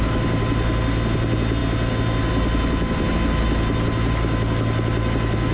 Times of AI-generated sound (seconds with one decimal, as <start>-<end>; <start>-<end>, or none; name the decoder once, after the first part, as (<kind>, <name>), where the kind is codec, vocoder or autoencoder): none